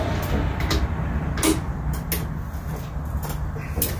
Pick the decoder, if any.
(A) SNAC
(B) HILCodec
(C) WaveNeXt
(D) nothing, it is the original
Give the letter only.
D